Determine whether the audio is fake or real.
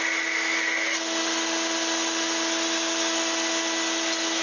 real